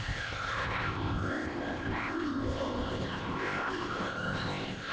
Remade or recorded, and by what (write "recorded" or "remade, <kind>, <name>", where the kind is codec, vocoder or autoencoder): remade, codec, ZipCodec